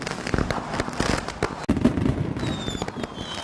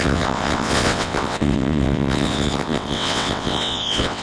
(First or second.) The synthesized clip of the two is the second